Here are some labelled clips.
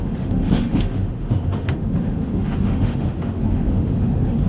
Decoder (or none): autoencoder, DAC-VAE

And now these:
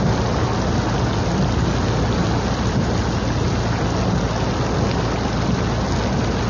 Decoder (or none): none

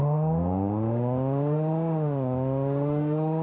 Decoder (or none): autoencoder, DAC-VAE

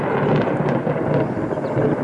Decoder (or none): none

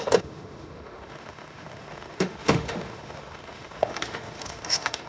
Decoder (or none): autoencoder, DAC-VAE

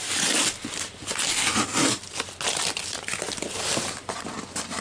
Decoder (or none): none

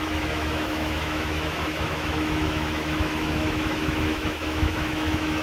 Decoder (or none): autoencoder, DAC-VAE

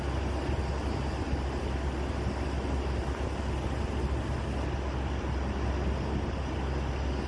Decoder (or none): none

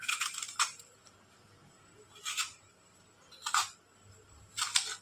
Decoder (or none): none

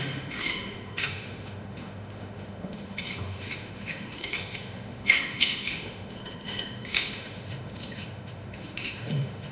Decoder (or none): autoencoder, DAC-VAE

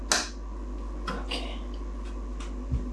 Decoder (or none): none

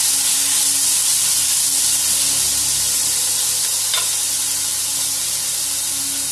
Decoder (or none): none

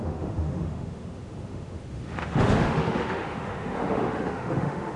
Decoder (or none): autoencoder, DAC-VAE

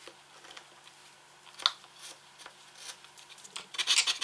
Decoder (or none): none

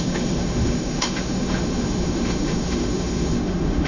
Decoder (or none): autoencoder, DAC-VAE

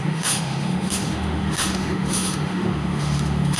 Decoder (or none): autoencoder, DAC-VAE